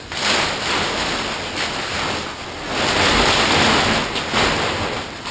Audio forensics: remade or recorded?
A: recorded